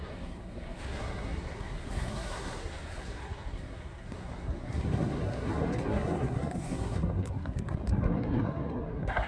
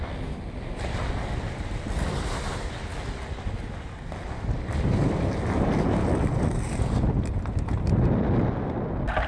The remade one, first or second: first